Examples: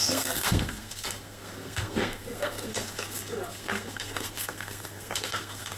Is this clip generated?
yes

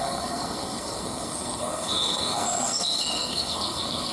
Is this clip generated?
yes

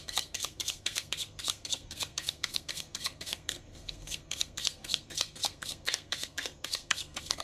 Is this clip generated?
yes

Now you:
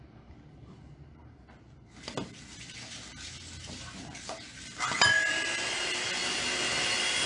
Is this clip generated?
no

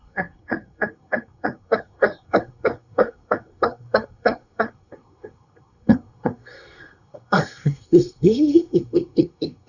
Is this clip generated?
yes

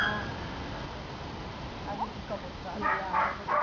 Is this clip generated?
no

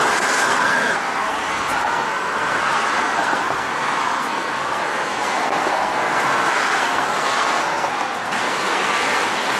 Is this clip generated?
yes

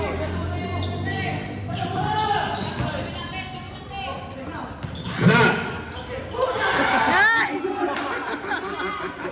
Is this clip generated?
no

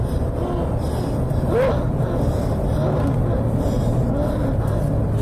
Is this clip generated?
no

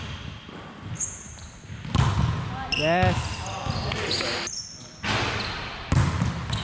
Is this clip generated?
no